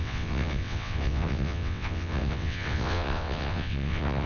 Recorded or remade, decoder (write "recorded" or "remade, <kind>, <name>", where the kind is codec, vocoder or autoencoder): remade, vocoder, WaveNeXt